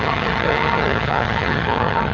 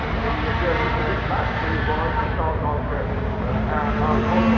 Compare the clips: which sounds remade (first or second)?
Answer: first